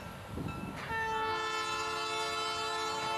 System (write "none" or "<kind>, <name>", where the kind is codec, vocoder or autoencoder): none